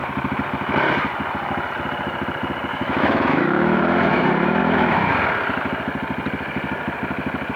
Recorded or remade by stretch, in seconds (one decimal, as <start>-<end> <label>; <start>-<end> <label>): 0.0-2.7 recorded; 2.7-3.8 remade; 3.8-4.6 recorded; 4.6-5.1 remade; 5.1-7.6 recorded